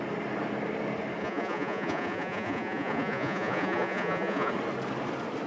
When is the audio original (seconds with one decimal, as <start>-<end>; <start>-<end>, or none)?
0.0-1.2; 4.5-5.5